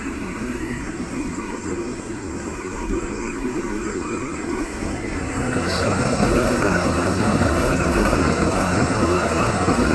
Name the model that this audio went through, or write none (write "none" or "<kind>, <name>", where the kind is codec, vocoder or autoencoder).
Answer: codec, SNAC